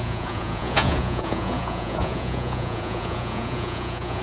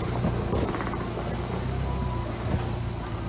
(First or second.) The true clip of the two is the second